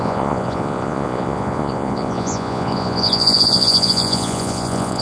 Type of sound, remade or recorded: remade